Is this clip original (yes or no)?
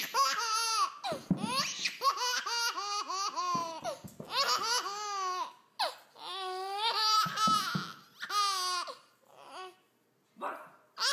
yes